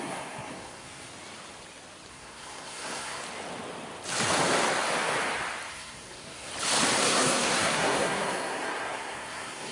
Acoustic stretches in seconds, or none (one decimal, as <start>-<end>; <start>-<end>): 1.1-2.1; 3.2-5.7; 6.5-7.0